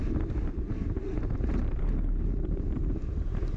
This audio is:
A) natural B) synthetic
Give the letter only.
B